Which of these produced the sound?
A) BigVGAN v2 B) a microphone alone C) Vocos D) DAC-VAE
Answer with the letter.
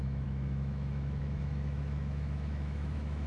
D